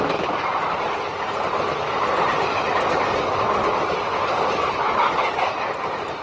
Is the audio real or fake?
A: real